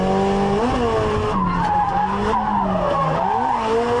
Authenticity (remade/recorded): recorded